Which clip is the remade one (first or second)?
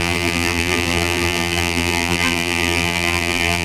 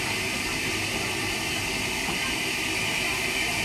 first